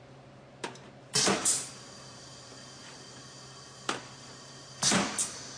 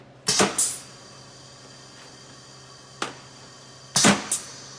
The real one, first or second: second